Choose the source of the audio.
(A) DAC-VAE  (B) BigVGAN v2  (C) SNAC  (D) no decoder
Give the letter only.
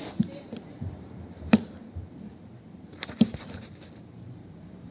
B